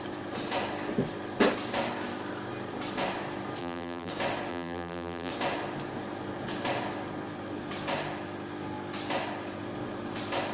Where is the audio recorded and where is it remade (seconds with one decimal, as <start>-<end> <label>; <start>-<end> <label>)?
0.0-3.6 recorded; 3.6-4.1 remade; 4.1-4.5 recorded; 4.5-5.3 remade; 5.3-10.5 recorded